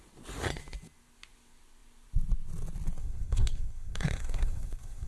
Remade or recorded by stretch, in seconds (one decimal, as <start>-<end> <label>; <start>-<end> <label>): 0.0-3.0 recorded; 3.0-5.1 remade